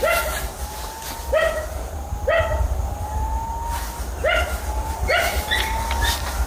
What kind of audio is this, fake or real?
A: real